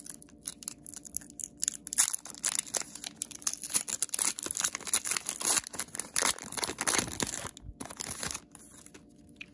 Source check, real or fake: real